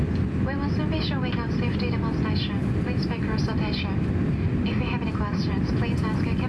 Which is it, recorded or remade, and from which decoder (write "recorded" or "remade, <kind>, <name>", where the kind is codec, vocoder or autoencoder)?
recorded